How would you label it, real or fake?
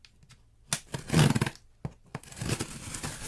real